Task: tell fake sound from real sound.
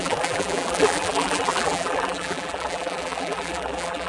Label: fake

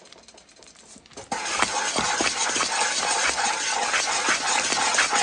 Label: real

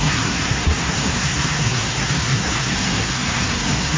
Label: fake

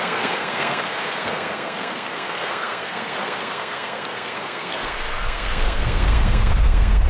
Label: fake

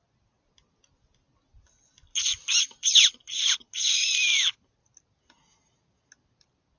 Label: real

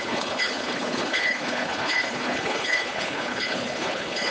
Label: fake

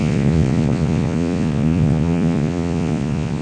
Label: fake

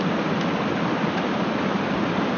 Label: real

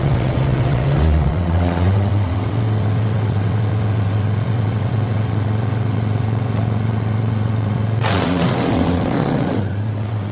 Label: fake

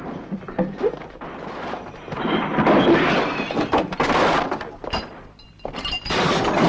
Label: fake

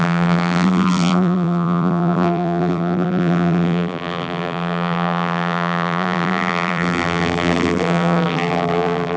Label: fake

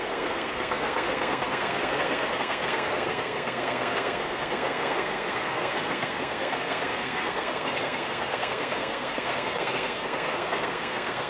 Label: fake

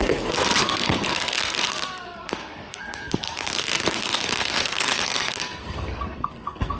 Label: fake